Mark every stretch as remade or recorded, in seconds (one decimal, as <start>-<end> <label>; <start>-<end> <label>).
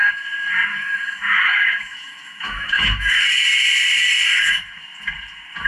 0.0-0.7 recorded; 0.7-3.1 remade; 3.1-5.7 recorded